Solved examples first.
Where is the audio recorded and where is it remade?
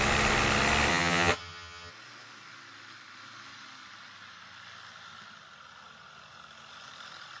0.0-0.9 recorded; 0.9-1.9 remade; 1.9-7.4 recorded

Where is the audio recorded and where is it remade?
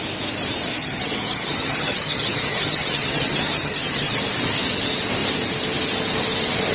0.0-0.7 recorded; 0.7-4.2 remade; 4.2-6.7 recorded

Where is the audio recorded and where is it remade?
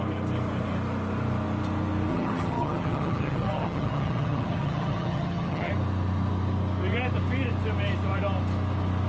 0.0-2.1 recorded; 2.1-5.7 remade; 5.7-9.1 recorded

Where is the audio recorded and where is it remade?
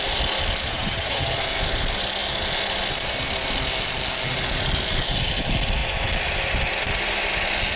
0.0-0.7 recorded; 0.7-1.4 remade; 1.4-7.8 recorded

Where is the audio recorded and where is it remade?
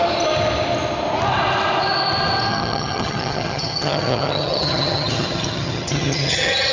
0.0-2.5 recorded; 2.5-6.7 remade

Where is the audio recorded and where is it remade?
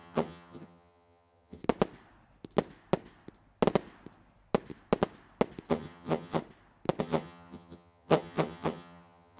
0.0-1.6 remade; 1.6-5.7 recorded; 5.7-6.4 remade; 6.4-7.0 recorded; 7.0-9.4 remade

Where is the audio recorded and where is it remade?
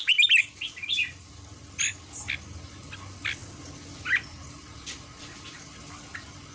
0.0-6.5 recorded